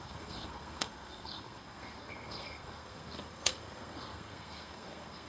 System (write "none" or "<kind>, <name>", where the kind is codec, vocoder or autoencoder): codec, SNAC